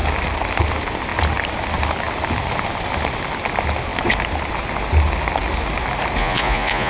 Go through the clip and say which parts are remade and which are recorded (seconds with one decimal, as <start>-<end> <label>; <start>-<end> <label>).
0.0-6.2 recorded; 6.2-6.9 remade